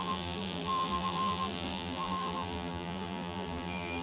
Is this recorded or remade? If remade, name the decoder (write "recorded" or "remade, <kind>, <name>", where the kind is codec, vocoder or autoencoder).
remade, vocoder, BigVGAN v2